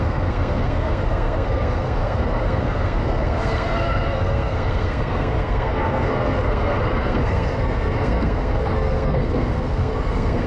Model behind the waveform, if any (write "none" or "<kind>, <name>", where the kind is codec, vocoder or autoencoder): codec, SNAC